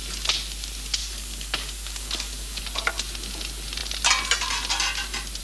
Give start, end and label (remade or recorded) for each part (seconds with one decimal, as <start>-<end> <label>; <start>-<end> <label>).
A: 0.0-1.0 recorded; 1.0-2.6 remade; 2.6-5.4 recorded